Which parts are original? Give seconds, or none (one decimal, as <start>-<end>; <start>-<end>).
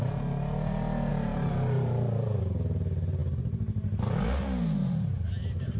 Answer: 0.0-1.1; 2.4-4.8